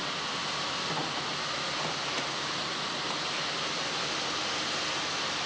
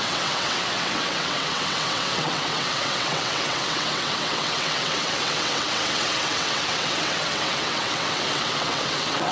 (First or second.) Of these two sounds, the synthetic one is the second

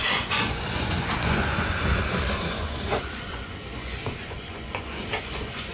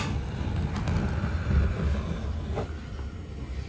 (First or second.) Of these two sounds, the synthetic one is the first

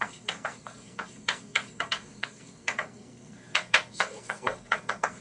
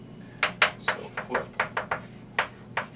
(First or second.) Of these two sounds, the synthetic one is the first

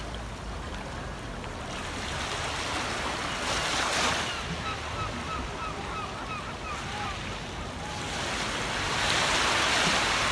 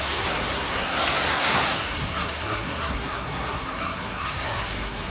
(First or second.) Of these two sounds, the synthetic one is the second